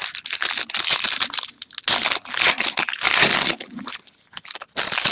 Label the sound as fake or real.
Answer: real